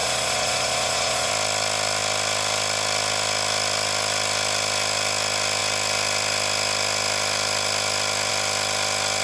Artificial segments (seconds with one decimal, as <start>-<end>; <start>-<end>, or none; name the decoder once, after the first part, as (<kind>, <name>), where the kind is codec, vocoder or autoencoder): 0.0-1.3 (vocoder, Vocos)